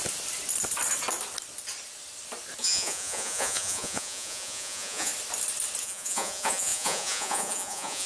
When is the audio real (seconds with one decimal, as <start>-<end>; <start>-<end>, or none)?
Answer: 0.0-2.6; 5.1-5.8